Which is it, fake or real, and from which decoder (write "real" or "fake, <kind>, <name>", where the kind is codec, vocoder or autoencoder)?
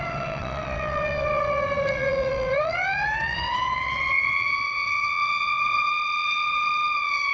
fake, vocoder, WaveNeXt